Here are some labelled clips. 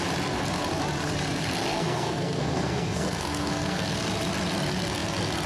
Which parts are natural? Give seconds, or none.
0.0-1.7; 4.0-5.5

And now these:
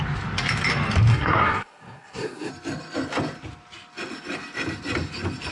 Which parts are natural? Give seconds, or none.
0.0-1.1; 2.5-5.5

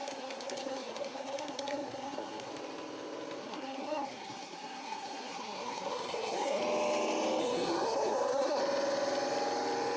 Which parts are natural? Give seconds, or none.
2.5-3.4; 6.6-7.4; 8.6-10.0

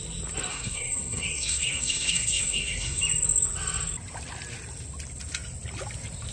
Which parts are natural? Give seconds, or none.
0.0-0.5; 3.0-6.3